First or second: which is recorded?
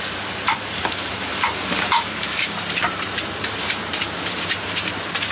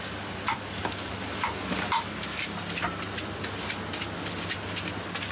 second